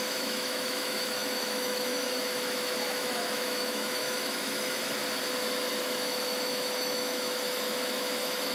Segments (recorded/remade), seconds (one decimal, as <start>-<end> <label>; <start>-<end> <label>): 0.0-5.0 remade; 5.0-5.7 recorded; 5.7-8.5 remade

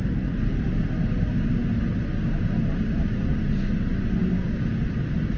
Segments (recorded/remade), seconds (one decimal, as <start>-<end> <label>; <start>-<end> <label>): 0.0-5.4 recorded

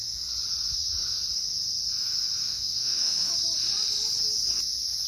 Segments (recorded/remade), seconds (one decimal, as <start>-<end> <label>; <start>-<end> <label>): 0.0-2.4 recorded; 2.4-3.3 remade; 3.3-5.1 recorded

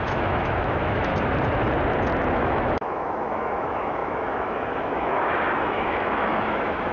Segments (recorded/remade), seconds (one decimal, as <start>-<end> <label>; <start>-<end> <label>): 0.0-1.1 remade; 1.1-2.3 recorded; 2.3-6.9 remade

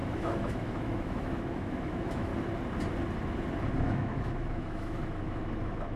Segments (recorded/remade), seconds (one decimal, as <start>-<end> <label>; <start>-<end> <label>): 0.0-2.3 remade; 2.3-3.8 recorded; 3.8-6.0 remade

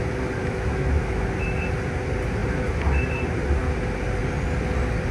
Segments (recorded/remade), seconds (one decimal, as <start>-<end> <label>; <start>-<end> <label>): 0.0-0.4 recorded; 0.4-1.3 remade; 1.3-5.1 recorded

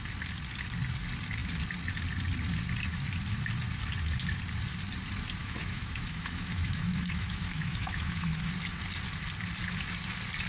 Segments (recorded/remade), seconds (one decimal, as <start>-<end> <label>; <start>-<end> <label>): 0.0-5.4 recorded; 5.4-8.5 remade; 8.5-10.5 recorded